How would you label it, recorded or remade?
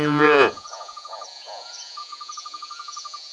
remade